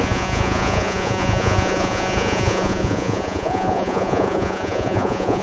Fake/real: fake